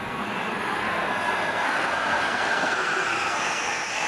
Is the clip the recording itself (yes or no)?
no